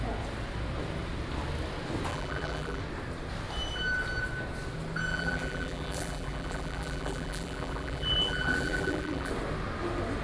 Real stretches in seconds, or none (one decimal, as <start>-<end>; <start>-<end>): 0.0-2.1; 2.8-5.1; 9.3-10.2